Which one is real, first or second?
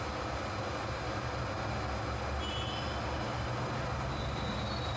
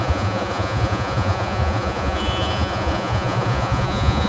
first